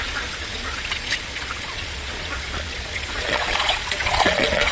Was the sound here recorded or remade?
remade